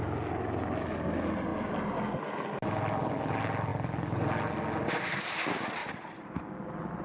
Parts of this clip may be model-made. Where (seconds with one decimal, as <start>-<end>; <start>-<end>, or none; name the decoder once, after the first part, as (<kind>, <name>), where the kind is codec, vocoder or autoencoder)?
5.8-6.4 (vocoder, BigVGAN v2)